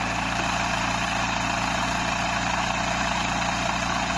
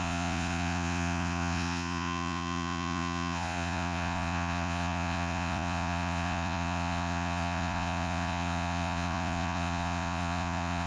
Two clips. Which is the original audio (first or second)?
first